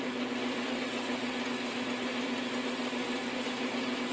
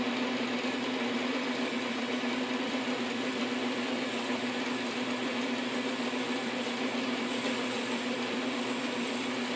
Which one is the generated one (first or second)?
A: second